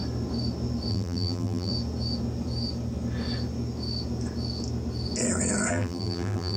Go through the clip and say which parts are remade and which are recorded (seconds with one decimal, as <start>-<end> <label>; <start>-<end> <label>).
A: 0.0-0.9 recorded; 0.9-1.7 remade; 1.7-5.7 recorded; 5.7-6.6 remade